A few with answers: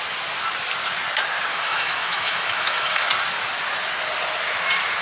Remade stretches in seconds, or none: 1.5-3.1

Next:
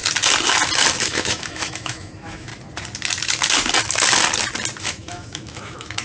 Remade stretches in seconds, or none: 1.0-2.5; 4.8-6.0

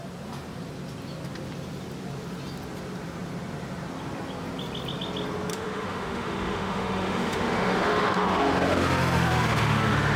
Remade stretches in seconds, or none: 5.5-10.2